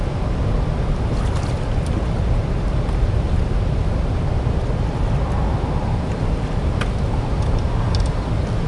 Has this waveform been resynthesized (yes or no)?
no